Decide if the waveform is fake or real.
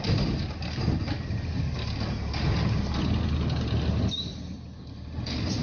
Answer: real